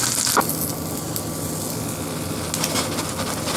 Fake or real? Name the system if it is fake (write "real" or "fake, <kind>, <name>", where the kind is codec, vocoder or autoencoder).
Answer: real